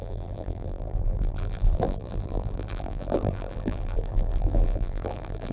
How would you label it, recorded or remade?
remade